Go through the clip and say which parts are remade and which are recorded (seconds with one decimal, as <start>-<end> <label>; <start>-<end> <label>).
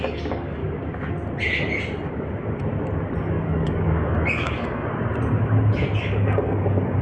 0.0-0.6 remade; 0.6-3.2 recorded; 3.2-4.8 remade; 4.8-6.0 recorded; 6.0-7.0 remade